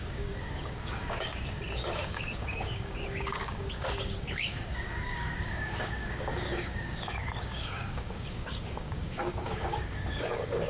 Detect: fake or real fake